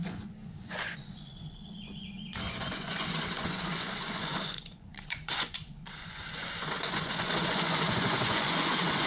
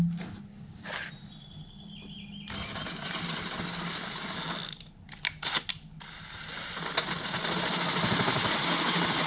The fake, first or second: first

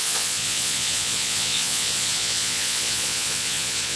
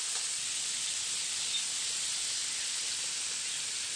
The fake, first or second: first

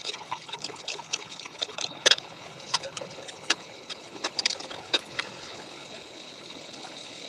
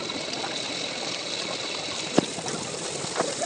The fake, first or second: first